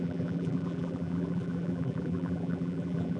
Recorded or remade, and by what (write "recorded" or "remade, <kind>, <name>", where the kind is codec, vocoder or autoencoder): remade, vocoder, BigVGAN v2